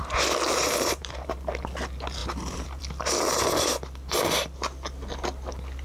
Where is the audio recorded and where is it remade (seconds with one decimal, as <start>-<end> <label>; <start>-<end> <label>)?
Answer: 0.0-1.0 recorded; 1.0-1.6 remade; 1.6-2.2 recorded; 2.2-2.8 remade; 2.8-5.8 recorded